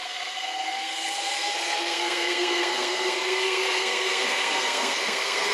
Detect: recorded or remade remade